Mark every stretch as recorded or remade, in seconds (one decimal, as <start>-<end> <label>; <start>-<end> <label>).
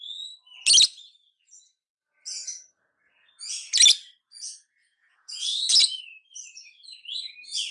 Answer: 0.0-4.8 recorded; 4.8-6.0 remade; 6.0-7.7 recorded